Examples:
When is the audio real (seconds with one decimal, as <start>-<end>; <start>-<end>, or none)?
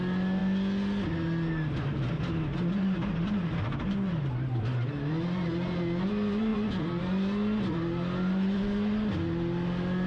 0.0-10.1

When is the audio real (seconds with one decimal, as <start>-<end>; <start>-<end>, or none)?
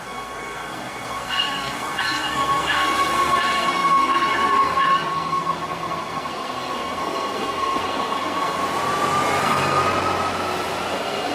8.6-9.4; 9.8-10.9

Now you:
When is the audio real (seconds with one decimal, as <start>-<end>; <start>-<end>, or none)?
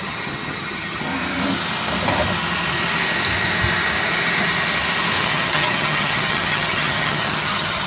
1.1-5.2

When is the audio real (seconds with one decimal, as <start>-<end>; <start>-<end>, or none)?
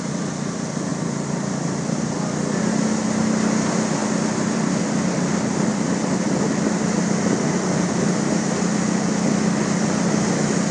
0.0-0.9; 2.7-4.0; 4.8-5.7; 6.4-10.7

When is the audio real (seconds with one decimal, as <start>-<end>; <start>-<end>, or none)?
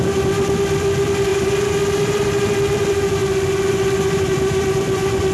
3.2-3.7